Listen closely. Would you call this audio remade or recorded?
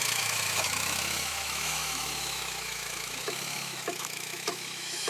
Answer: remade